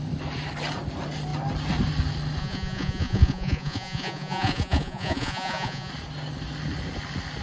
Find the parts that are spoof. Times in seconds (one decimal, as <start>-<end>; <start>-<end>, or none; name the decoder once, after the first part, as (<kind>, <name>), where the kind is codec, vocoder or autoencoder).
2.4-5.9 (vocoder, Vocos)